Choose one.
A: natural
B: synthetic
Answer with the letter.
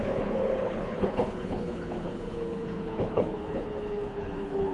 B